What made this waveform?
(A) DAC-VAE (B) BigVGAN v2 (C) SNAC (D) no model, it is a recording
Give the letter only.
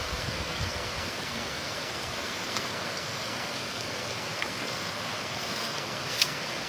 C